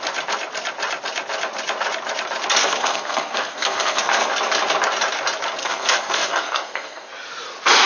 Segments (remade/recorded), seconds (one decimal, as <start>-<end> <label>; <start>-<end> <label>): 0.0-2.6 recorded; 2.6-4.3 remade; 4.3-5.6 recorded; 5.6-7.1 remade; 7.1-7.9 recorded